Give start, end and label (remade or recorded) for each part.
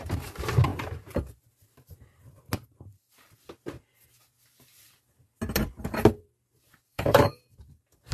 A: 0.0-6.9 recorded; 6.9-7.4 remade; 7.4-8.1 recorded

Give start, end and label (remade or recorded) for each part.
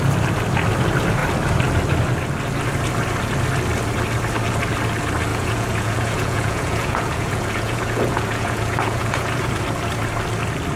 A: 0.0-5.3 recorded; 5.3-9.6 remade; 9.6-10.8 recorded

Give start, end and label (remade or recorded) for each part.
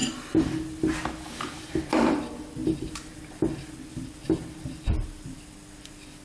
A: 0.0-6.2 recorded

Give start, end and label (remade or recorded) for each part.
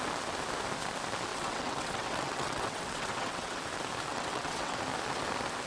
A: 0.0-1.3 recorded; 1.3-3.6 remade; 3.6-4.1 recorded; 4.1-4.8 remade; 4.8-5.7 recorded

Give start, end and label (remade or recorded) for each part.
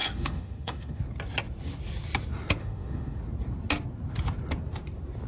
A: 0.0-1.0 remade; 1.0-2.6 recorded; 2.6-3.2 remade; 3.2-5.3 recorded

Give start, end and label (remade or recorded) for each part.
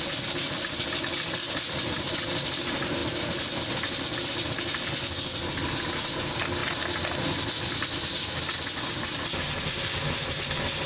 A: 0.0-10.9 recorded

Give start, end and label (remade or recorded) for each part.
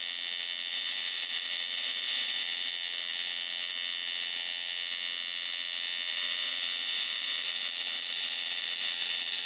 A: 0.0-0.7 recorded; 0.7-2.7 remade; 2.7-6.1 recorded; 6.1-9.5 remade